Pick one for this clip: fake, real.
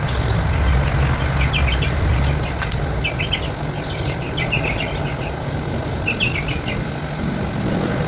real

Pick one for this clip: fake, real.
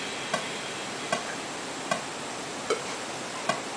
real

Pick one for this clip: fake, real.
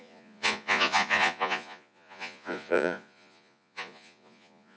fake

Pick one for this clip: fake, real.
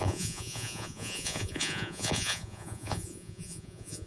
fake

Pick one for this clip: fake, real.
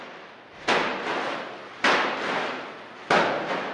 real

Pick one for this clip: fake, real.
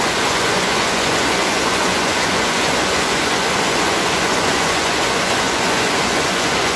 fake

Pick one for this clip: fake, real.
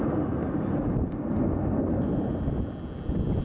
real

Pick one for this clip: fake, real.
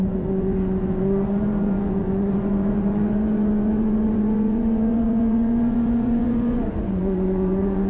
fake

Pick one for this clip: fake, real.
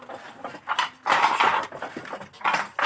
real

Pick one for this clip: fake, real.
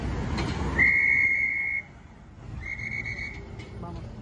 real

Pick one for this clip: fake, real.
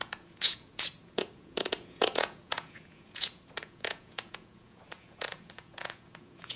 fake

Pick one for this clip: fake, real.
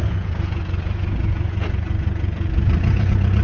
fake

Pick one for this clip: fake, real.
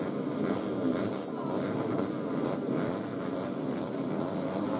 real